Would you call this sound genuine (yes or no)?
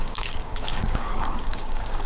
no